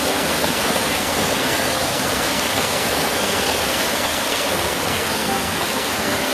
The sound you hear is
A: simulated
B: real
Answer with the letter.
A